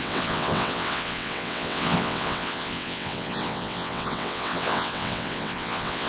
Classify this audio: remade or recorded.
remade